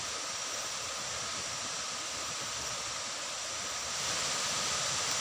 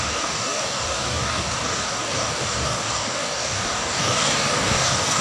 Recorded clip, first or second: first